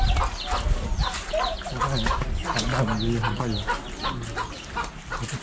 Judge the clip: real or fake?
real